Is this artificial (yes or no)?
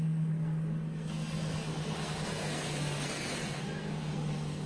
yes